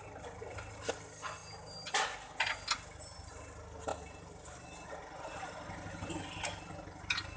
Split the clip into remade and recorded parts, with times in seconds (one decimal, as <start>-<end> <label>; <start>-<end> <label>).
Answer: 0.0-7.4 recorded